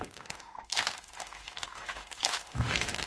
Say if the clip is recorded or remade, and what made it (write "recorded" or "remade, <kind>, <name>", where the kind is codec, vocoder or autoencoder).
remade, autoencoder, DAC-VAE